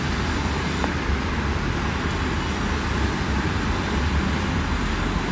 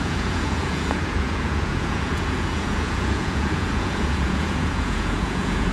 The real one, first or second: first